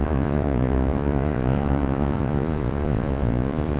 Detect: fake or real fake